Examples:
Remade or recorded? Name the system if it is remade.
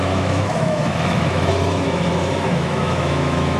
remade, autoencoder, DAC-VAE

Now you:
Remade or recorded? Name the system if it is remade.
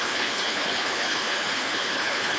remade, codec, HILCodec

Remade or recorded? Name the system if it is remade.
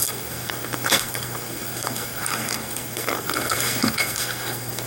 remade, codec, SNAC